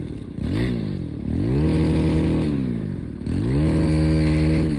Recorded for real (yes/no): yes